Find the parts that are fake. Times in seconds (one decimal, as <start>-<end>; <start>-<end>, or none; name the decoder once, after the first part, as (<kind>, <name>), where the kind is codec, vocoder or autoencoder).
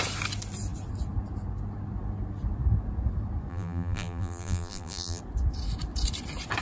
3.5-5.2 (vocoder, BigVGAN v2)